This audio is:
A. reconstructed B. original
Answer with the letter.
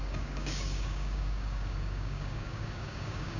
A